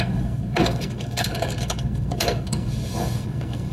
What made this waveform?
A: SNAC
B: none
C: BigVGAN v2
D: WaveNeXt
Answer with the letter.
A